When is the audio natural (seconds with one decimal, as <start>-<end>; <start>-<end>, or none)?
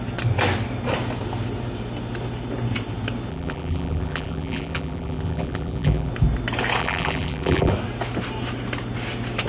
0.0-3.3; 6.1-6.8; 7.7-9.5